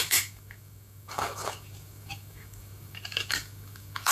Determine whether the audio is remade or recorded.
remade